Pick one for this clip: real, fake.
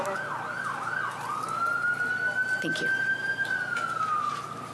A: real